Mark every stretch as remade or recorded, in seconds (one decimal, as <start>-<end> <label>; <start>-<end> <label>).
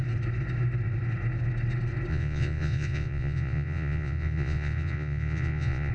0.0-2.1 recorded; 2.1-5.9 remade